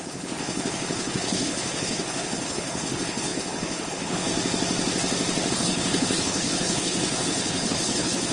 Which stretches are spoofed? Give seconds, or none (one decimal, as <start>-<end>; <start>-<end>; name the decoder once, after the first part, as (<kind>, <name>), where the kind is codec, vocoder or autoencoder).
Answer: 0.0-4.3 (codec, HILCodec); 5.5-8.3

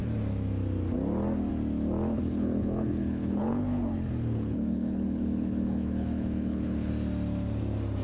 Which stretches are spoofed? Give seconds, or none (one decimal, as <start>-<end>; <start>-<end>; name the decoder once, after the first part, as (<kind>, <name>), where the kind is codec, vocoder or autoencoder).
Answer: 2.1-6.9 (codec, HILCodec)